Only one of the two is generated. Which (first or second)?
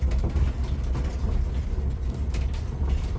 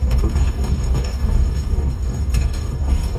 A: second